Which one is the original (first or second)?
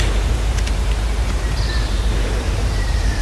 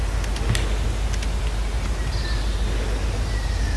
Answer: second